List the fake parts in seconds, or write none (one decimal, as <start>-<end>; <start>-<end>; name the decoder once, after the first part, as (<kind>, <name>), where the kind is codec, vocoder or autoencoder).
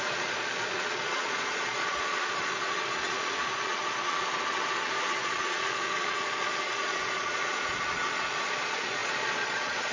0.0-9.9 (vocoder, Vocos)